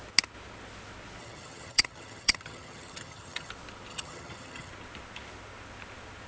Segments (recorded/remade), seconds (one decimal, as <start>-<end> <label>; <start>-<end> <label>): 0.0-1.2 recorded; 1.2-3.5 remade; 3.5-3.9 recorded; 3.9-4.7 remade; 4.7-6.3 recorded